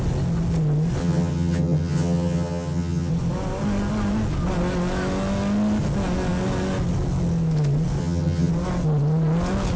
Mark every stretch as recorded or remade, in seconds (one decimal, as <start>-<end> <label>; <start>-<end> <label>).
0.0-1.0 recorded; 1.0-3.1 remade; 3.1-8.0 recorded; 8.0-8.5 remade; 8.5-9.8 recorded